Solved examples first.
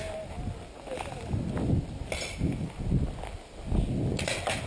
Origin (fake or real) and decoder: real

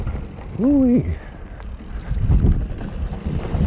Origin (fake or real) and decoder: real